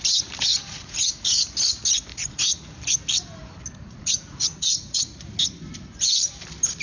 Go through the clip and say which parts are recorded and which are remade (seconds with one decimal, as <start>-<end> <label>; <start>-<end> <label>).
0.0-0.5 recorded; 0.5-1.1 remade; 1.1-2.1 recorded; 2.1-2.8 remade; 2.8-3.8 recorded; 3.8-5.3 remade; 5.3-6.8 recorded